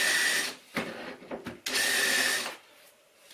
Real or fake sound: real